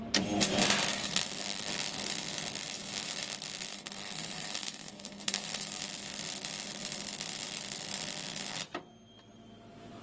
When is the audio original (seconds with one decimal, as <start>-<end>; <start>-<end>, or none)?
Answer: 0.0-0.9; 1.7-3.7; 5.8-10.0